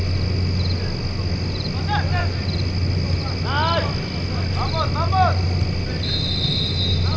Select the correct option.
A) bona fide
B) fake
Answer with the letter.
A